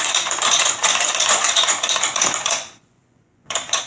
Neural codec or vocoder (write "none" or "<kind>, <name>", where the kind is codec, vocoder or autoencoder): vocoder, Vocos